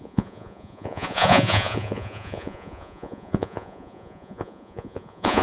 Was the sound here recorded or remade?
remade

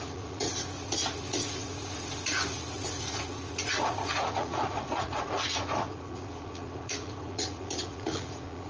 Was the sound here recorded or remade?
remade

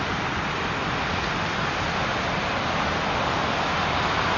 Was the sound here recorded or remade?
recorded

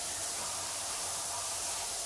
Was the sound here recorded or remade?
remade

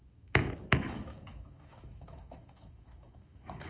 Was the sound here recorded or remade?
remade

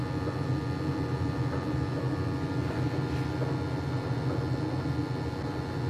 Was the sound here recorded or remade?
recorded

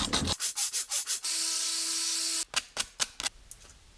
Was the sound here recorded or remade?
recorded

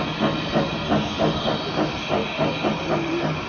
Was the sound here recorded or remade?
recorded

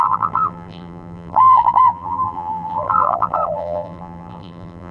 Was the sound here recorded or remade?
remade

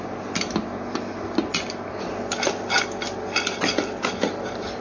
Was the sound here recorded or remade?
recorded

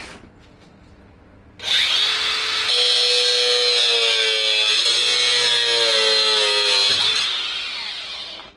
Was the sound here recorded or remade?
recorded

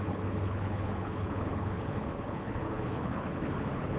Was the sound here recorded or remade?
remade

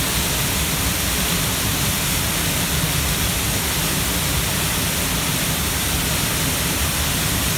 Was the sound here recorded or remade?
recorded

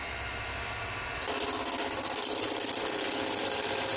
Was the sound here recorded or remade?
recorded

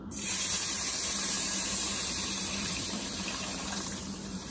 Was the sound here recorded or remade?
remade